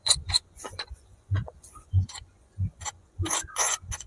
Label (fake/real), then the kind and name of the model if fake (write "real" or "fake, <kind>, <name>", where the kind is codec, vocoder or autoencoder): fake, vocoder, Vocos